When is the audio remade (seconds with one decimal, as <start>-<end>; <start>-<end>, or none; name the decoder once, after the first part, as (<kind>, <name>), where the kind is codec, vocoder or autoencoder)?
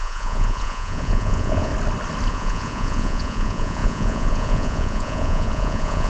0.0-1.7 (vocoder, Vocos); 2.3-6.1